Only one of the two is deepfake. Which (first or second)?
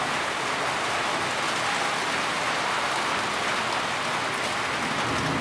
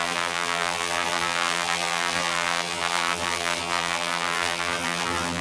second